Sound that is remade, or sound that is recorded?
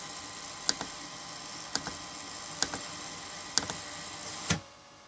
recorded